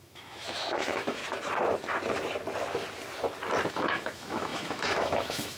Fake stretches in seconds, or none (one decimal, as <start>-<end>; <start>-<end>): 0.0-1.2; 3.7-5.6